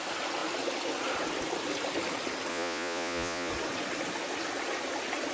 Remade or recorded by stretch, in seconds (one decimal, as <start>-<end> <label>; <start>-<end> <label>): 0.0-2.5 recorded; 2.5-3.5 remade; 3.5-5.3 recorded